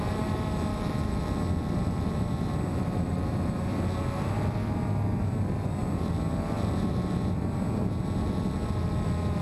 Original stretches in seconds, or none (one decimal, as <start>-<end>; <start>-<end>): 0.0-0.7; 1.2-2.7; 3.6-9.4